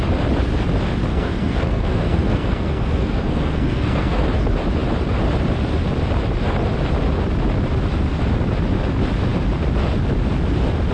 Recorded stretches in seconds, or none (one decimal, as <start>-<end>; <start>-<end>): 0.0-1.1; 4.2-10.9